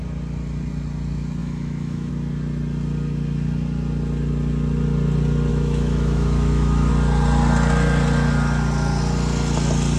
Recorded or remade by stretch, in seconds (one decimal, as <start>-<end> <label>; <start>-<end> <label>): 0.0-1.4 recorded; 1.4-2.1 remade; 2.1-5.5 recorded; 5.5-6.9 remade; 6.9-10.0 recorded